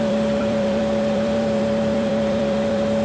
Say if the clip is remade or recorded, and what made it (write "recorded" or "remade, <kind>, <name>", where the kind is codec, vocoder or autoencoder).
remade, vocoder, BigVGAN v2